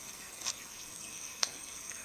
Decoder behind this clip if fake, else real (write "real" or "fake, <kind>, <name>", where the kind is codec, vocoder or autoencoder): fake, codec, SNAC